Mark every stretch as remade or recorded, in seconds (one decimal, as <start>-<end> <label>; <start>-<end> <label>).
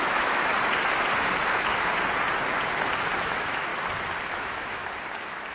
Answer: 0.0-0.5 remade; 0.5-3.2 recorded; 3.2-3.7 remade; 3.7-4.3 recorded; 4.3-4.8 remade; 4.8-5.5 recorded